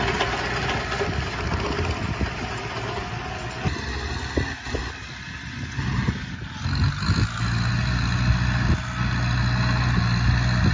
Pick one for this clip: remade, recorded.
recorded